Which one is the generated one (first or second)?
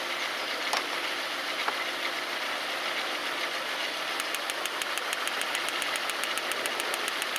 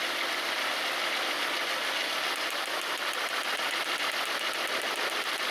second